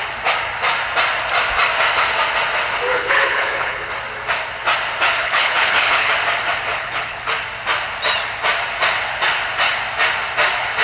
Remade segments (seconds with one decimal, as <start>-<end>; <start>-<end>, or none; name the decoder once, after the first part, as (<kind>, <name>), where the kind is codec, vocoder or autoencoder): 2.9-3.9 (codec, HILCodec); 5.2-6.1; 6.7-7.2